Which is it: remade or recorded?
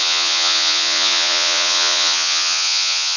remade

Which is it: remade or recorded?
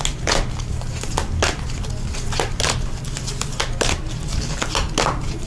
recorded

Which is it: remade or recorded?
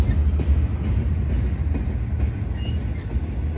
recorded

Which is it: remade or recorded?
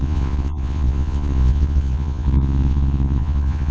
remade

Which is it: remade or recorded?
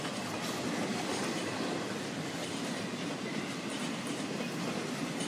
recorded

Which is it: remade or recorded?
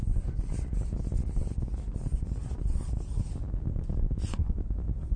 recorded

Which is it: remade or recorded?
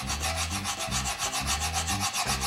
recorded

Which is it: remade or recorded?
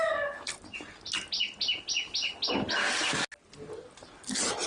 recorded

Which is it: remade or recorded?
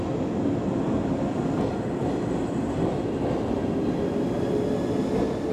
recorded